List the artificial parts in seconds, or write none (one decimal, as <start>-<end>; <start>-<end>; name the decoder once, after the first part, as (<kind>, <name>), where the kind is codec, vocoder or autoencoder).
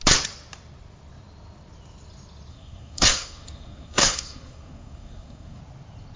2.5-5.6 (codec, SNAC)